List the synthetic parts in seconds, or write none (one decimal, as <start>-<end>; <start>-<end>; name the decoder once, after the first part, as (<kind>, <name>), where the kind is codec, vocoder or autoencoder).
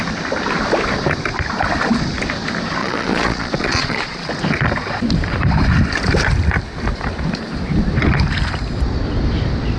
2.8-4.3 (vocoder, Vocos)